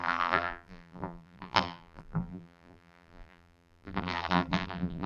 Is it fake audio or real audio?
fake